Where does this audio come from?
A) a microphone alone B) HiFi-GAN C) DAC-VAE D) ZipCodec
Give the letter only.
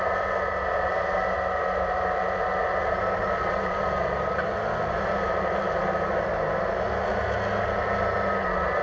A